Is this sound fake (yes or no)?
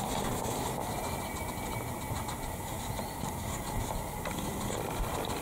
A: no